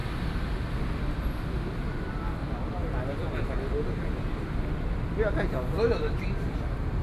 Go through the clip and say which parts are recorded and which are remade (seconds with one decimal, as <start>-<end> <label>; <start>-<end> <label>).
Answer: 0.0-7.0 recorded